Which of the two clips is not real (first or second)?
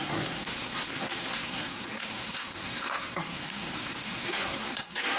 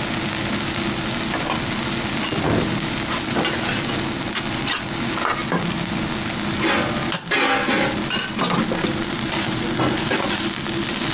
first